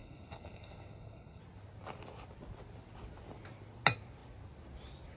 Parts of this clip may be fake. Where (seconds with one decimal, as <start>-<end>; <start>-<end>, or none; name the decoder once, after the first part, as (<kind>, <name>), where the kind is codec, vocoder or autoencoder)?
0.0-1.4 (codec, SNAC)